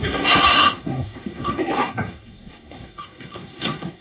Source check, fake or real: fake